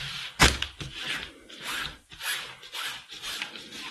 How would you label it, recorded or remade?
recorded